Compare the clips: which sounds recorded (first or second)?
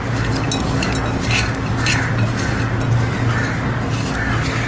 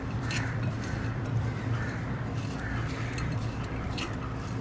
first